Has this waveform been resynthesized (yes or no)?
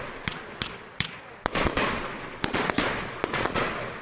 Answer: yes